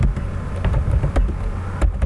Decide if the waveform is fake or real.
real